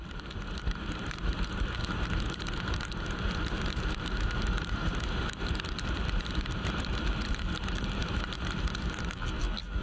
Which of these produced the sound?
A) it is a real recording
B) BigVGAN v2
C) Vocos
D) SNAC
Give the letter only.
B